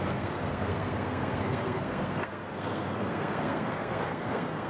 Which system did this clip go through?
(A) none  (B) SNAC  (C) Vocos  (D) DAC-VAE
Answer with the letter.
B